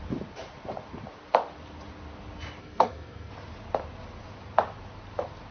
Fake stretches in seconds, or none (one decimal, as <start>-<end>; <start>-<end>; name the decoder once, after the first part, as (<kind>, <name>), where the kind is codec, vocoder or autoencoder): 2.6-3.3 (codec, SNAC)